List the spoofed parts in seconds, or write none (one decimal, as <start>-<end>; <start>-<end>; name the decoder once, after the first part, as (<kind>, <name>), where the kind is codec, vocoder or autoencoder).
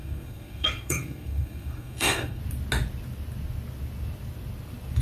0.0-2.4 (codec, SNAC)